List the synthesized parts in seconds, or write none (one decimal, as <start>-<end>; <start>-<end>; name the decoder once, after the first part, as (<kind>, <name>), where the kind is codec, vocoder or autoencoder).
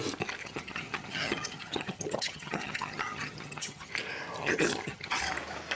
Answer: 0.4-3.9 (vocoder, HiFi-GAN); 4.4-5.2